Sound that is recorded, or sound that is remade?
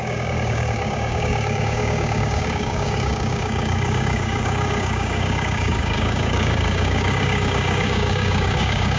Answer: remade